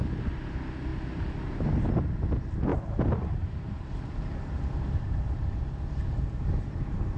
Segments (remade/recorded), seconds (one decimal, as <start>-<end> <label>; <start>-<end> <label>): 0.0-2.7 recorded; 2.7-7.2 remade